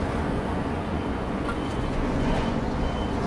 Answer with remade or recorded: remade